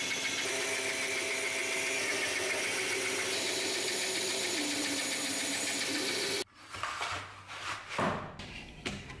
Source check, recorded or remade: recorded